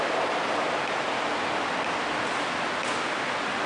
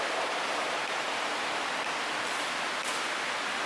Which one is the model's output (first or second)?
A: second